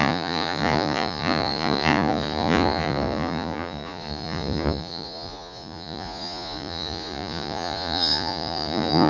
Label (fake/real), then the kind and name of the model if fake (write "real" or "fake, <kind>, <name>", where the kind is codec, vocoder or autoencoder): fake, vocoder, Vocos